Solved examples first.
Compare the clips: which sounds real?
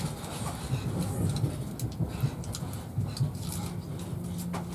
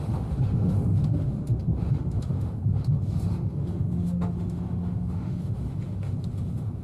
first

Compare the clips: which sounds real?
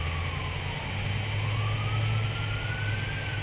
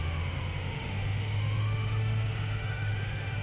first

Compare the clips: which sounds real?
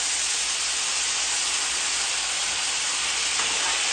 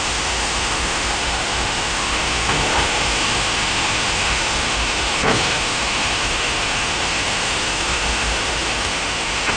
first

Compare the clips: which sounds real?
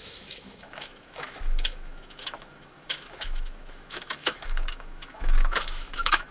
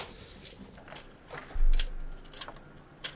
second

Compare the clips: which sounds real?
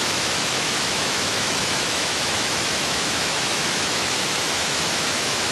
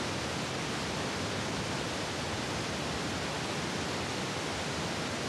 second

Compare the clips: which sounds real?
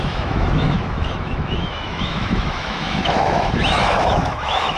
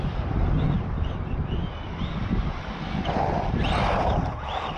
second